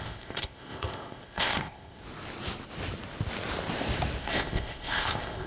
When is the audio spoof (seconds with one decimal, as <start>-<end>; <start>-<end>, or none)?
0.0-2.0; 4.2-5.5